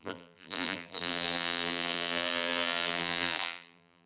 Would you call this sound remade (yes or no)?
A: yes